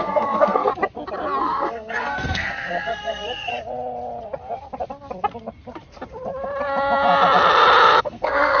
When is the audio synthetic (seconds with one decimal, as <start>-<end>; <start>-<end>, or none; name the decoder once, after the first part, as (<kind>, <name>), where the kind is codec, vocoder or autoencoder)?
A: 0.0-0.7 (codec, SNAC); 1.4-3.5; 8.0-8.6